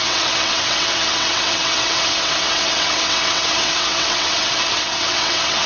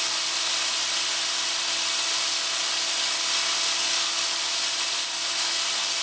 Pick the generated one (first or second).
first